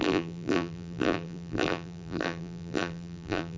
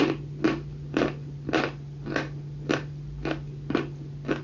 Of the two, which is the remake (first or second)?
first